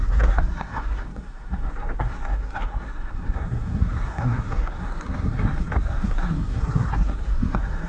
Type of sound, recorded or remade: remade